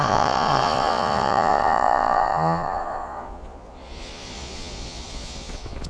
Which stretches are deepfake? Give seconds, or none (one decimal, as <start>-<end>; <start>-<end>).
0.0-5.9